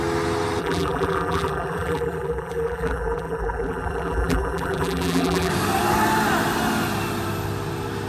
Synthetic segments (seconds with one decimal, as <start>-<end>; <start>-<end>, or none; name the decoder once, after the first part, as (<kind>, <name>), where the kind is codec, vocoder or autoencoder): 0.6-5.5 (vocoder, BigVGAN v2)